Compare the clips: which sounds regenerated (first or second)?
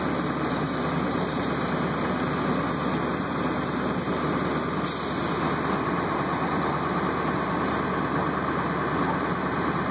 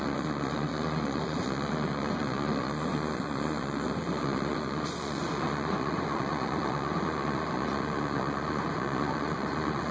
second